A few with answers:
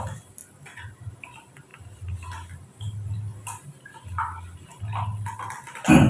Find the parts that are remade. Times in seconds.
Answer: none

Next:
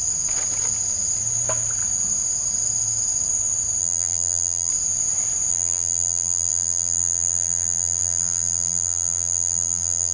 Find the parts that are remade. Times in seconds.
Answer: 3.8-4.7; 5.5-10.1

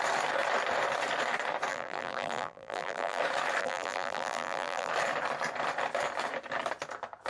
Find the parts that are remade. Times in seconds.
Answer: 1.7-3.2; 3.6-4.9

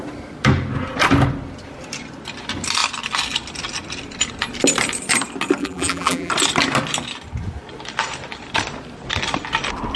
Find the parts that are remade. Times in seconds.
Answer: 5.6-6.3

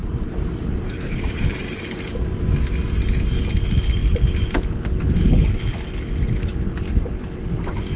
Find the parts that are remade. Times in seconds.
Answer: 0.0-2.7